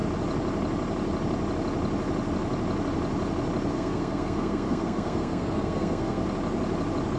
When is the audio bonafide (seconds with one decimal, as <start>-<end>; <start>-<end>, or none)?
0.0-3.7; 6.2-7.2